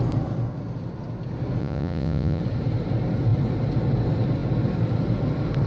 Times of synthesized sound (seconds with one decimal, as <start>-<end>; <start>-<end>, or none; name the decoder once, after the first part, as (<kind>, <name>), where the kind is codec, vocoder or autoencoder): 1.6-2.4 (vocoder, Vocos)